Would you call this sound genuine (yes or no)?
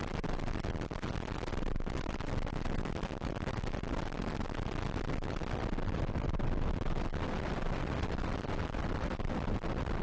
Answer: yes